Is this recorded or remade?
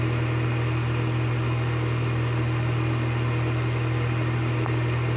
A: recorded